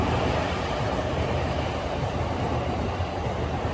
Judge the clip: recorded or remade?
remade